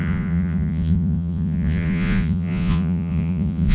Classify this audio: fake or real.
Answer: fake